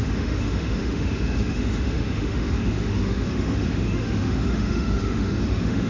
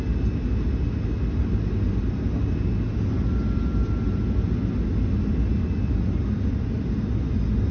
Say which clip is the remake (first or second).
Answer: first